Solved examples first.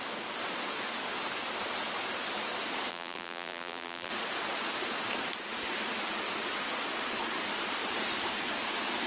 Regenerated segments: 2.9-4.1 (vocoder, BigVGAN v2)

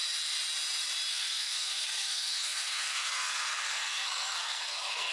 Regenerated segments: 1.1-5.1 (codec, SNAC)

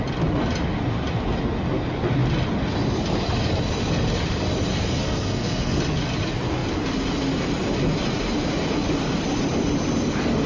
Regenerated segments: 4.7-5.8 (codec, SNAC)

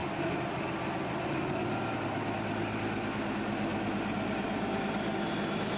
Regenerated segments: none

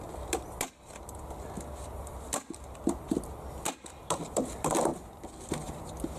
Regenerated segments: none

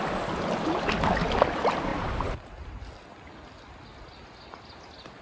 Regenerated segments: none

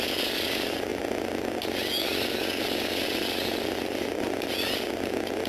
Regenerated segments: none